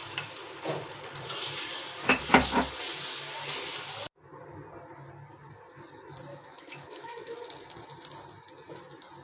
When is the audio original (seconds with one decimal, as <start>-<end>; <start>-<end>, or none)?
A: 0.0-6.3; 7.4-9.2